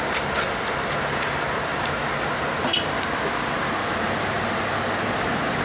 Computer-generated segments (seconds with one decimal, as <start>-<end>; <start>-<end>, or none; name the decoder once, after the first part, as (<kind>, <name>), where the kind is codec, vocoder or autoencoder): none